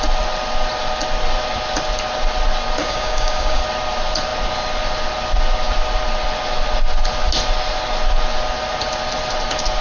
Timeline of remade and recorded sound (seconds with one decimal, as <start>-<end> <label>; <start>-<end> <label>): 0.0-2.8 recorded; 2.8-3.6 remade; 3.6-9.8 recorded